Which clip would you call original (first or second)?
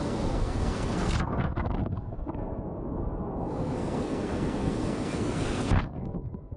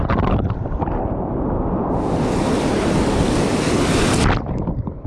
second